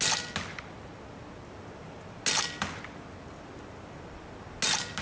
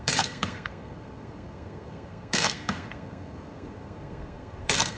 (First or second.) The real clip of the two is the first